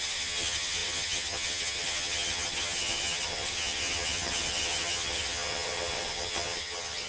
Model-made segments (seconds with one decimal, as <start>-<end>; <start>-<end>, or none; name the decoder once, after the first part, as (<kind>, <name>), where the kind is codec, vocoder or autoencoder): 0.0-7.1 (vocoder, HiFi-GAN)